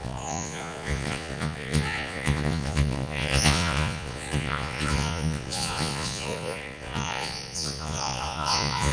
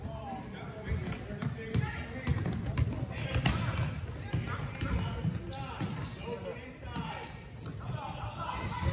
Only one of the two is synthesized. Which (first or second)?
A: first